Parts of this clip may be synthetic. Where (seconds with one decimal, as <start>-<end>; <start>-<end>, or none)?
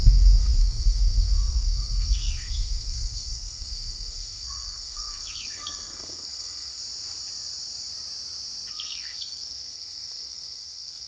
0.0-6.8; 8.7-11.1